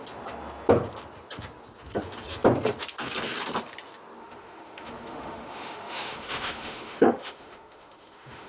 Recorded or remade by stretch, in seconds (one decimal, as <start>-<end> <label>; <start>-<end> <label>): 0.0-4.2 recorded; 4.2-8.5 remade